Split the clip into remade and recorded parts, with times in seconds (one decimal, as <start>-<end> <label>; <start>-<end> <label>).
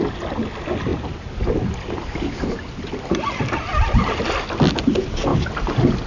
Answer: 0.0-6.1 recorded